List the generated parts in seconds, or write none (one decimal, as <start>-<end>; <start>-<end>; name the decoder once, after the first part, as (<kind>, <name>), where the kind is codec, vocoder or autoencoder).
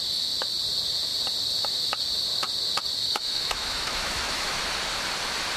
3.0-4.6 (autoencoder, DAC-VAE)